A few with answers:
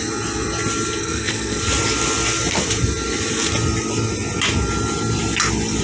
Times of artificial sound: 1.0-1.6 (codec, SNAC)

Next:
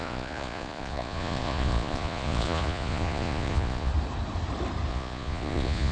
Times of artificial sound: 0.0-3.9 (vocoder, Vocos); 4.9-5.9

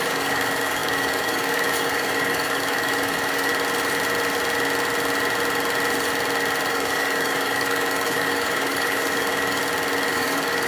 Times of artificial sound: 0.0-3.5 (codec, DAC); 6.7-9.6; 10.1-10.7

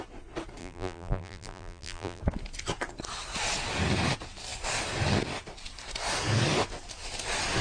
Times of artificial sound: 0.6-2.2 (vocoder, BigVGAN v2)

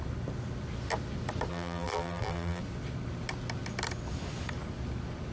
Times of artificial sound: 1.5-2.6 (vocoder, BigVGAN v2)

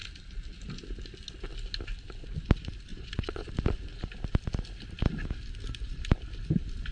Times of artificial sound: 2.9-3.5 (vocoder, Vocos)

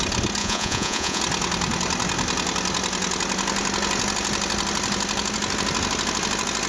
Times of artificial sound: 0.4-1.2 (vocoder, Vocos)

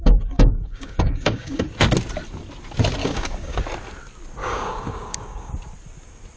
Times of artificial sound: 0.0-1.6 (codec, DAC); 3.0-3.6; 4.4-5.5